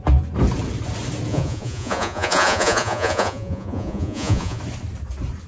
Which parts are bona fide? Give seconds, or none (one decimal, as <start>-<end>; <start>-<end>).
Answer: 0.0-1.3; 4.6-5.5